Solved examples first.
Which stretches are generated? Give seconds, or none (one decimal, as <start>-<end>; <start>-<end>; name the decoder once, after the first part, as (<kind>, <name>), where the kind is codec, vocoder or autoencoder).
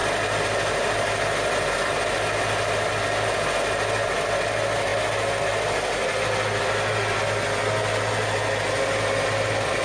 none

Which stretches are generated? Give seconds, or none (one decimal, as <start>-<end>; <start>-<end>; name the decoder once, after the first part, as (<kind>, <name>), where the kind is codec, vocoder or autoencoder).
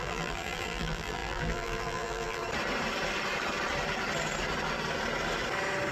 0.0-2.4 (vocoder, BigVGAN v2)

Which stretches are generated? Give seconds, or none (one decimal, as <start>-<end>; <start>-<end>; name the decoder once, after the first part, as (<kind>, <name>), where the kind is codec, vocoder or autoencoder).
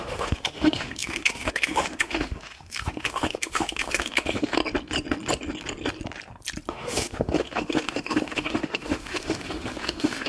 0.0-4.6 (autoencoder, DAC-VAE); 6.7-10.3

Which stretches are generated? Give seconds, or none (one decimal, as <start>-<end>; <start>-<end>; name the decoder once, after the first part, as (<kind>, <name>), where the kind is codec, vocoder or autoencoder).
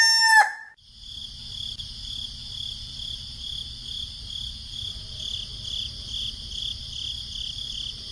none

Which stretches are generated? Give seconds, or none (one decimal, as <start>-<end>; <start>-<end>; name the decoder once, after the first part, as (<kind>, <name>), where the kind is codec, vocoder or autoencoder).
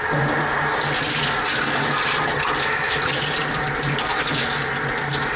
none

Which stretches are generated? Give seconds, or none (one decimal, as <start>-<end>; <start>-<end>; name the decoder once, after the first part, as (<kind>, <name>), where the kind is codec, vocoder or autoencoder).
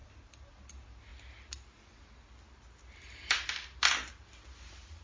none